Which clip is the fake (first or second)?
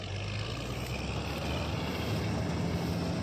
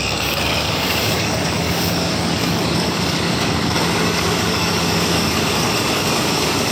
second